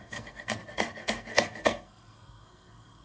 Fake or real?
fake